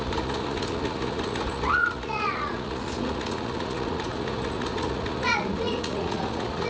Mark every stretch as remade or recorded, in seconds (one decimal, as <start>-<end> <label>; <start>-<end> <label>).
0.0-6.7 remade